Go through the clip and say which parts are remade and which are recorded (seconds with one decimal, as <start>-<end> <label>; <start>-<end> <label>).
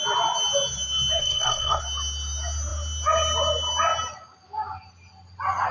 0.0-1.2 recorded; 1.2-1.8 remade; 1.8-5.7 recorded